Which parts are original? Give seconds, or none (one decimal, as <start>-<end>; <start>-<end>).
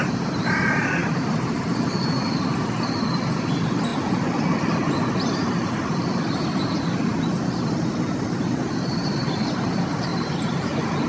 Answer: 0.0-11.1